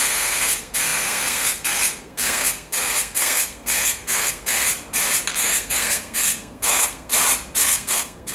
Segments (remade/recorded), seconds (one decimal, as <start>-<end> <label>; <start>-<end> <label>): 0.0-4.7 remade; 4.7-5.3 recorded; 5.3-7.1 remade; 7.1-7.6 recorded; 7.6-8.3 remade